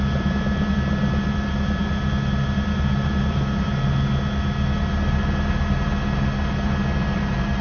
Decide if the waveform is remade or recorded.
recorded